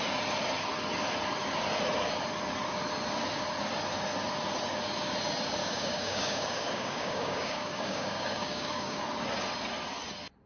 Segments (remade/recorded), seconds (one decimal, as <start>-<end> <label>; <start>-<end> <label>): 0.0-5.6 recorded; 5.6-9.0 remade; 9.0-10.5 recorded